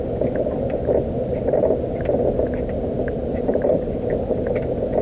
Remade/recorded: recorded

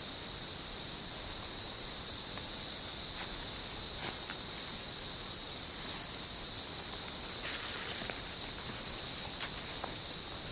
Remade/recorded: recorded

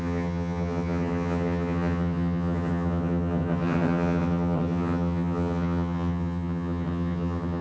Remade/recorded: remade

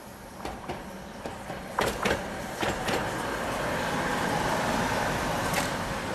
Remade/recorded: recorded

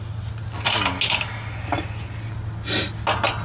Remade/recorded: recorded